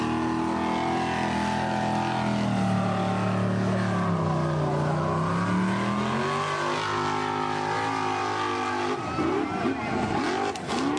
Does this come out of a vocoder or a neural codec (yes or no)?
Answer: no